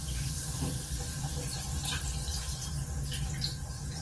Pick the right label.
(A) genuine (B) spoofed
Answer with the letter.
A